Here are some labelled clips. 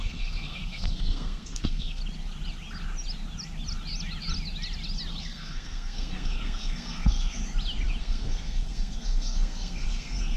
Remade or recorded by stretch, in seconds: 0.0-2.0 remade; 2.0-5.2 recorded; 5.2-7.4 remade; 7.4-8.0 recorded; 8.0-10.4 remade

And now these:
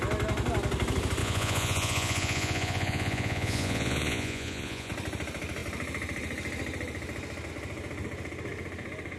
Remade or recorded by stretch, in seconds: 0.0-1.2 recorded; 1.2-4.9 remade; 4.9-9.2 recorded

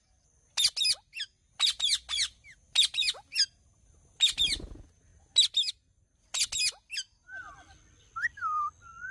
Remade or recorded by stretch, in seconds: 0.0-9.1 recorded

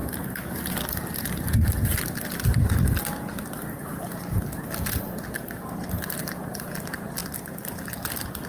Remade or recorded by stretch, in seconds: 0.0-6.2 recorded; 6.2-6.7 remade; 6.7-8.5 recorded